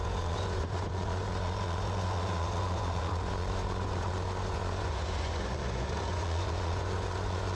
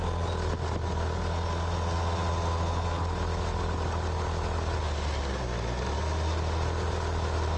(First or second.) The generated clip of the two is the first